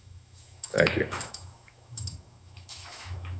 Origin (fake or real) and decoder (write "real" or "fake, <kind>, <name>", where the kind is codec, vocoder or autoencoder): fake, autoencoder, DAC-VAE